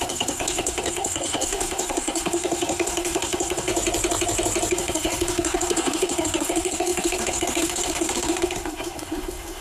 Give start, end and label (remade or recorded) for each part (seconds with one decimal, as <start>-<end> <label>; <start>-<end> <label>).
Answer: 0.0-3.7 remade; 3.7-4.7 recorded; 4.7-9.6 remade